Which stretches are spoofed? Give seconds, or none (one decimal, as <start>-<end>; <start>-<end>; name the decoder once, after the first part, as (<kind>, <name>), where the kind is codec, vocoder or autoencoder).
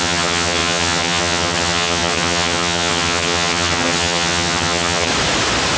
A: 0.0-5.1 (vocoder, HiFi-GAN)